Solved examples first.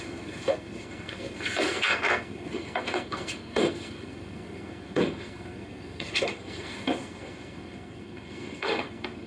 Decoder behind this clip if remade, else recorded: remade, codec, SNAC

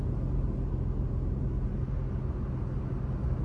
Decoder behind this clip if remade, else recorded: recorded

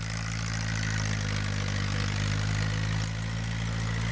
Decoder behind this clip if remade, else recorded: recorded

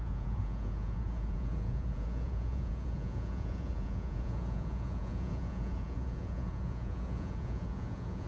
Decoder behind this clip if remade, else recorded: remade, vocoder, Vocos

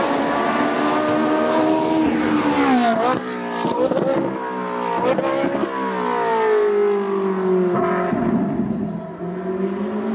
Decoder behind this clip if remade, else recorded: recorded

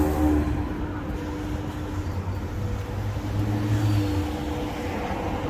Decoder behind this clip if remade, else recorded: recorded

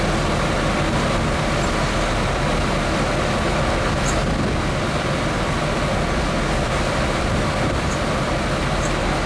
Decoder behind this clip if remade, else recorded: recorded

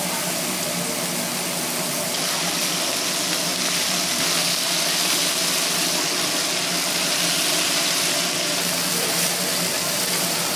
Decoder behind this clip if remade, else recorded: recorded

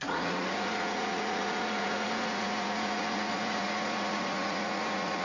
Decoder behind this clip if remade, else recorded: remade, vocoder, Vocos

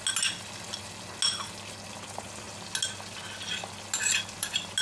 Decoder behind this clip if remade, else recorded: recorded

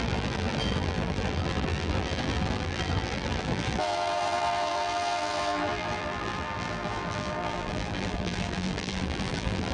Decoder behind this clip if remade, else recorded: remade, vocoder, BigVGAN v2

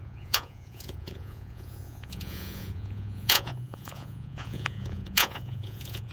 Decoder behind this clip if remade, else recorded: remade, vocoder, Vocos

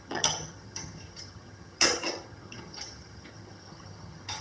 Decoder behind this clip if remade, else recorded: remade, vocoder, HiFi-GAN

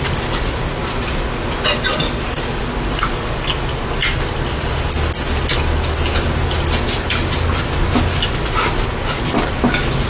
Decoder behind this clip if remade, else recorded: recorded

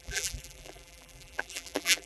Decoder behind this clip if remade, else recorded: remade, vocoder, BigVGAN v2